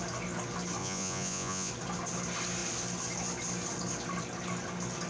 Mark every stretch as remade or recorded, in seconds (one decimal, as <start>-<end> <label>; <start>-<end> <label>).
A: 0.0-0.8 recorded; 0.8-1.7 remade; 1.7-5.1 recorded